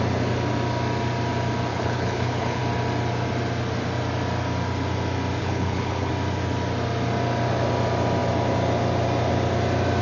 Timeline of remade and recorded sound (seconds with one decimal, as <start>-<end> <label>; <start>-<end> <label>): 0.0-1.7 recorded; 1.7-2.6 remade; 2.6-5.4 recorded; 5.4-6.1 remade; 6.1-10.0 recorded